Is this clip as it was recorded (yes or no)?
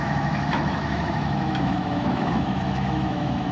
no